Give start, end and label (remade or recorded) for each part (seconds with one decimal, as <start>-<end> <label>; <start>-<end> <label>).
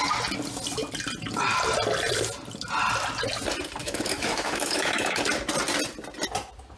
0.0-3.8 recorded; 3.8-5.2 remade; 5.2-6.8 recorded